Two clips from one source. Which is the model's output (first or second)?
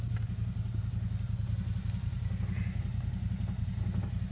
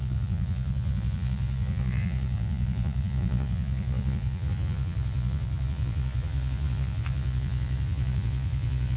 second